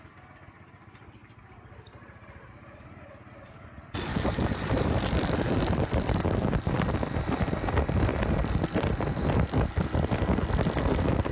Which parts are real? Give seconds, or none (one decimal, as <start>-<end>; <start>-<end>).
0.0-4.1; 6.7-8.1; 9.0-11.3